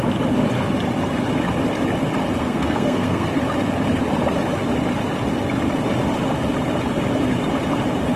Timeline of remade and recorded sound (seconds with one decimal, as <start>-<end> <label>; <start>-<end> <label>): 0.0-2.4 recorded; 2.4-3.4 remade; 3.4-8.2 recorded